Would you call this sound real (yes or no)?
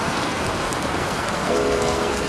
no